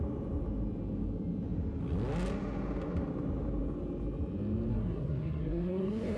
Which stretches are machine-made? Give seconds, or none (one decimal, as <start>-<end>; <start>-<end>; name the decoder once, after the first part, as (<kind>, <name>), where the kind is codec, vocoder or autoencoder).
4.7-6.2 (codec, SNAC)